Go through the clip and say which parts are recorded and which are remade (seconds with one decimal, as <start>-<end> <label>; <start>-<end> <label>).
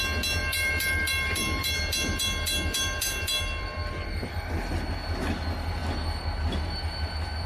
0.0-0.4 recorded; 0.4-4.9 remade; 4.9-7.5 recorded